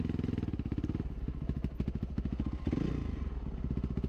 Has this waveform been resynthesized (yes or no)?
no